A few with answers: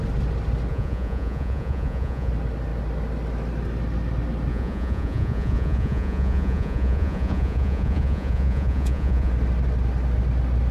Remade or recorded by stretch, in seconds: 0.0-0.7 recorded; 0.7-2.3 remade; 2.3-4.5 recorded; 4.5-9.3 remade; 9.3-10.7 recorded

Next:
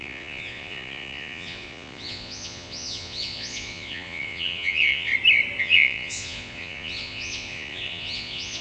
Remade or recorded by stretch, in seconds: 0.0-5.1 remade; 5.1-5.6 recorded; 5.6-8.6 remade

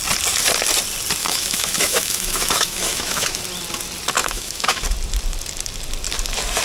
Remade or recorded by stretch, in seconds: 0.0-1.2 recorded; 1.2-3.4 remade; 3.4-4.2 recorded; 4.2-4.8 remade; 4.8-6.6 recorded

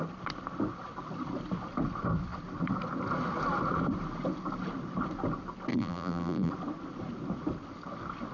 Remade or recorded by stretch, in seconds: 0.0-5.7 recorded; 5.7-6.5 remade; 6.5-8.3 recorded

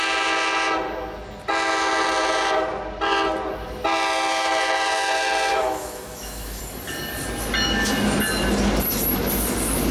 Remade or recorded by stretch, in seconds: 0.0-5.5 recorded; 5.5-6.6 remade; 6.6-9.9 recorded

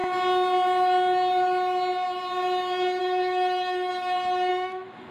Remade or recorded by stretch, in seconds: 0.0-3.0 recorded; 3.0-3.9 remade; 3.9-4.5 recorded; 4.5-5.1 remade

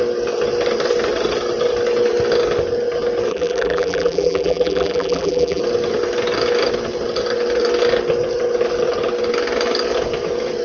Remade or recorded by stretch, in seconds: 0.0-3.3 recorded; 3.3-5.6 remade; 5.6-10.6 recorded

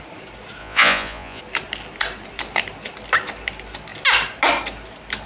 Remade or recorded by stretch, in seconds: 0.0-0.6 recorded; 0.6-1.4 remade; 1.4-5.3 recorded